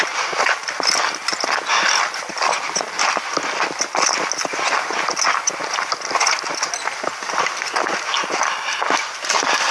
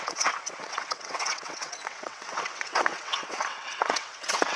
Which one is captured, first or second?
first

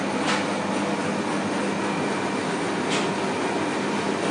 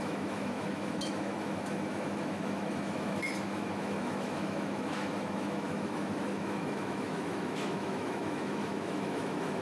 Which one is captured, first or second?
first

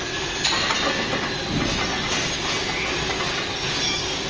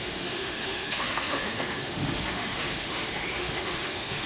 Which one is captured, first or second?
first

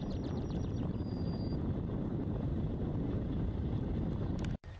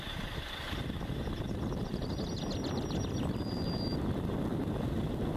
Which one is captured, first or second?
second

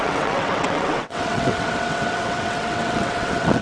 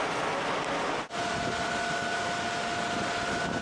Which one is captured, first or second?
second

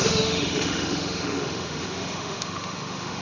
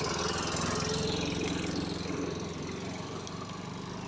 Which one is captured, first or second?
second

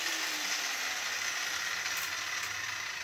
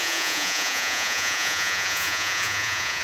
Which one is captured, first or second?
first